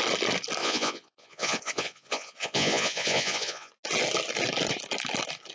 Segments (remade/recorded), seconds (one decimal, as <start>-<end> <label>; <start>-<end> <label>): 0.0-0.6 recorded; 0.6-3.7 remade; 3.7-5.5 recorded